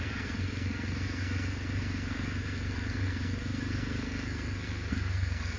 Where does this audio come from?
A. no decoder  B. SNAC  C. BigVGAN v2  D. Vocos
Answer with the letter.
B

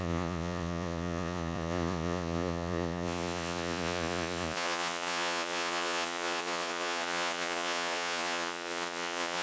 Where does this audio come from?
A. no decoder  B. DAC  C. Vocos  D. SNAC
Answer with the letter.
C